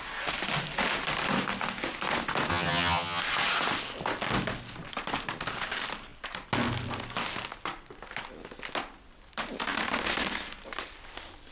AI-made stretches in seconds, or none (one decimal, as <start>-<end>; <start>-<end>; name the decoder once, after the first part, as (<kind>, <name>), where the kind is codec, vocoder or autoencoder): 2.5-3.2 (vocoder, HiFi-GAN)

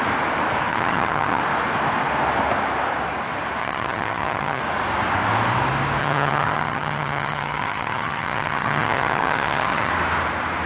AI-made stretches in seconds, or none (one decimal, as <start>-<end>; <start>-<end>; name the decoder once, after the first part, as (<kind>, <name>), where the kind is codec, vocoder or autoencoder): 0.7-1.4 (vocoder, HiFi-GAN); 3.6-4.6; 6.0-9.9

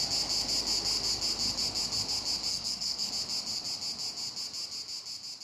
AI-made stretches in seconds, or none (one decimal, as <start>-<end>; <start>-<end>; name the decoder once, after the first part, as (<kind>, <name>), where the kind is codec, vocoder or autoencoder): 2.5-3.1 (codec, SNAC)

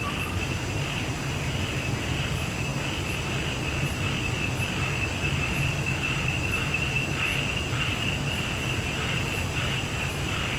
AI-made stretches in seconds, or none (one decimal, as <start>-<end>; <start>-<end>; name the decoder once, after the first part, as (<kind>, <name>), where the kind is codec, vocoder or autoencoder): 0.0-2.7 (vocoder, BigVGAN v2); 6.6-7.3; 8.3-10.6

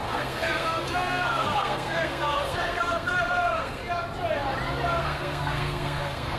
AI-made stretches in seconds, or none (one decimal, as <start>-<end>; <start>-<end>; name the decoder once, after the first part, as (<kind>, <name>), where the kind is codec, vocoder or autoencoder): 0.0-3.8 (codec, SNAC); 5.0-6.4

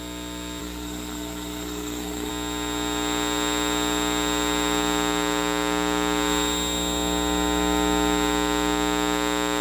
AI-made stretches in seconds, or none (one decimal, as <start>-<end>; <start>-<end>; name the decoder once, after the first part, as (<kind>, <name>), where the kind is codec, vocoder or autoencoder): 0.6-2.3 (codec, SNAC)